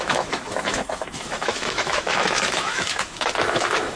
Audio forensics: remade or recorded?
remade